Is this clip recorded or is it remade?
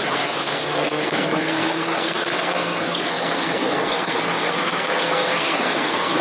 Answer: remade